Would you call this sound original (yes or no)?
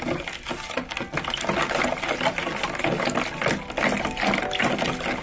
yes